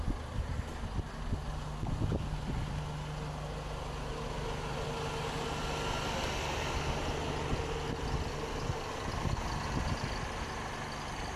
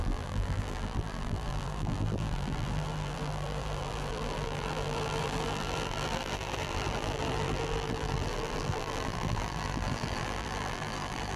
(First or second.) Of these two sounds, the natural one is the first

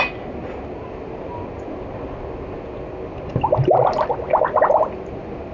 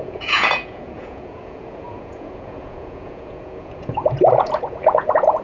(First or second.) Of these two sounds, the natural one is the first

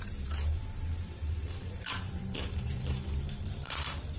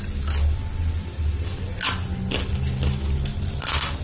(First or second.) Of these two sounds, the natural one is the second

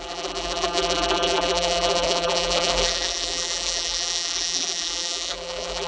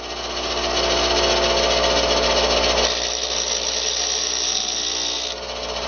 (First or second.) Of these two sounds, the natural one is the second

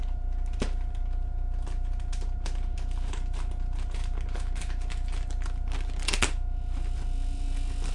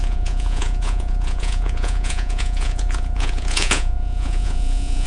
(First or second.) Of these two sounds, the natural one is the first